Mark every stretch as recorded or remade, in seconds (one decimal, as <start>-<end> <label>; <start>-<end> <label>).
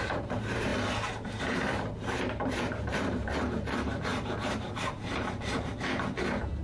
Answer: 0.0-0.7 remade; 0.7-1.4 recorded; 1.4-6.6 remade